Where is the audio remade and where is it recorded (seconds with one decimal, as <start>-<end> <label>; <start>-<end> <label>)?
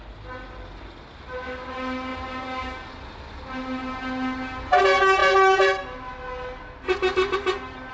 0.0-7.9 recorded